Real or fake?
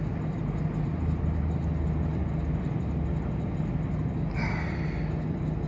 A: real